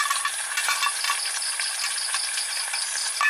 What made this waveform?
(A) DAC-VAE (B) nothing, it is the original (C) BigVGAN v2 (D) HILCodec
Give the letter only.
B